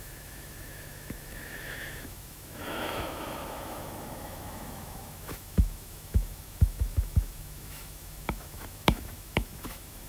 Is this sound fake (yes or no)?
yes